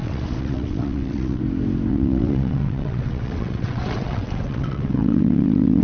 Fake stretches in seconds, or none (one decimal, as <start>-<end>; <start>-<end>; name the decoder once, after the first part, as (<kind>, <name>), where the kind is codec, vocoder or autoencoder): 0.0-1.4 (vocoder, WaveNeXt); 1.9-5.8

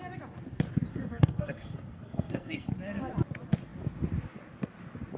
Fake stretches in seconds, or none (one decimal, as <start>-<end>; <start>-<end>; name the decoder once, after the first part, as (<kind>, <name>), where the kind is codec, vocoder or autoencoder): 0.9-2.7 (codec, SNAC)